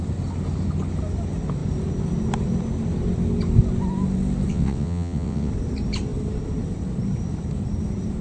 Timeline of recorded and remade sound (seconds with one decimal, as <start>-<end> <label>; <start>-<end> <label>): 0.0-4.5 recorded; 4.5-5.5 remade; 5.5-8.2 recorded